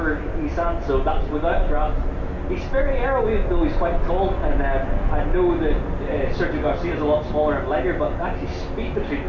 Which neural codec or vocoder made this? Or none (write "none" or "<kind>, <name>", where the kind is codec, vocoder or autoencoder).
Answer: none